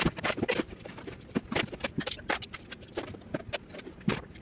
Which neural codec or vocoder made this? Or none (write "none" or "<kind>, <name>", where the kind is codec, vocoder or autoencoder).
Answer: none